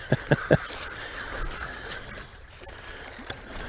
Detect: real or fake real